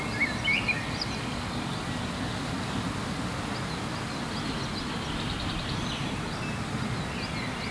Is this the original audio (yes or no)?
yes